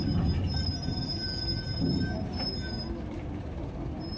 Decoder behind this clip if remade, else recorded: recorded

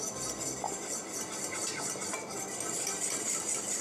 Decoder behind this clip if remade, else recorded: recorded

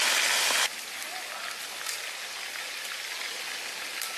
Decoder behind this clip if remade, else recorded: recorded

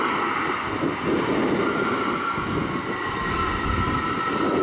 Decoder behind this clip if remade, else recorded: recorded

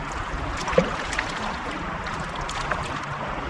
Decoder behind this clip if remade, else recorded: recorded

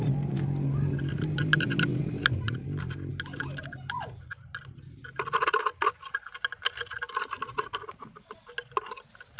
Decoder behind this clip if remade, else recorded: recorded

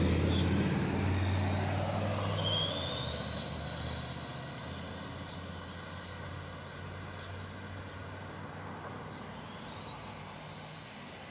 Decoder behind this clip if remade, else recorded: recorded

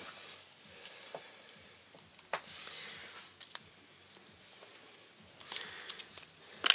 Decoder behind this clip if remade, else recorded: recorded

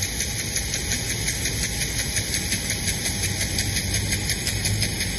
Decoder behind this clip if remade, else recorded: recorded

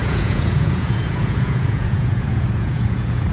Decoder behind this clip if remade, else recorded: remade, vocoder, Vocos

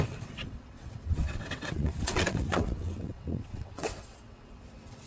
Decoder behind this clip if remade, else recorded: remade, vocoder, WaveNeXt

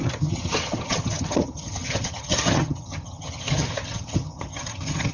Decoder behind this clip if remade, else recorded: remade, vocoder, HiFi-GAN